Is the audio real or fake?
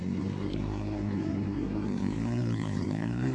fake